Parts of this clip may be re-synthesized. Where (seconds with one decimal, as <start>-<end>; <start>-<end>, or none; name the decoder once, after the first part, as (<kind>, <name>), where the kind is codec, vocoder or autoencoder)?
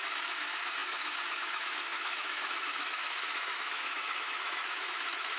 0.0-5.4 (autoencoder, DAC-VAE)